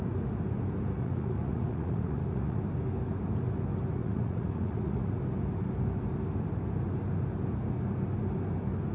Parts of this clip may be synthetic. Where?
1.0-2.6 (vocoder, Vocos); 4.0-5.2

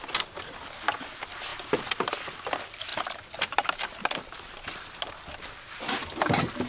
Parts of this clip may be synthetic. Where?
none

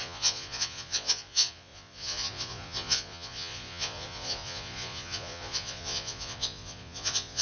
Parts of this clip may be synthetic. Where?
0.0-7.4 (vocoder, Vocos)

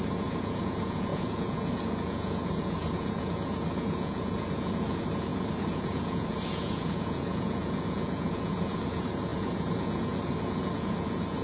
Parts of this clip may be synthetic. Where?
0.0-11.4 (vocoder, Vocos)